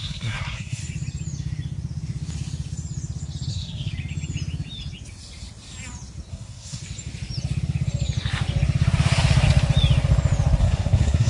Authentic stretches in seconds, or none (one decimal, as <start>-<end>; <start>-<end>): 0.8-3.5; 3.9-6.3; 6.8-10.6

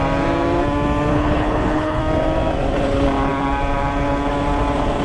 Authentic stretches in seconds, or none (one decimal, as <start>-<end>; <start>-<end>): 0.0-1.1; 2.0-5.0

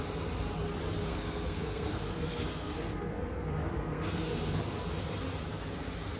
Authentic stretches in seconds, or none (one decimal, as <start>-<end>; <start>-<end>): 0.0-1.1; 4.6-6.2

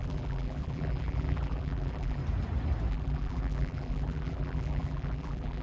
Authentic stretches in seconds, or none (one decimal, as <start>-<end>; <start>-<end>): 2.2-2.9

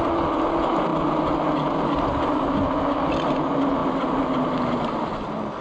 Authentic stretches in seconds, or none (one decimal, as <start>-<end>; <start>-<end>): 0.0-5.6